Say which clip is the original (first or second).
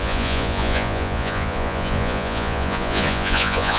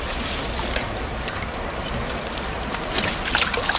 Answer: second